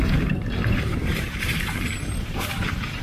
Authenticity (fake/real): fake